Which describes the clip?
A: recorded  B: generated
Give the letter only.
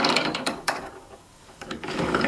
B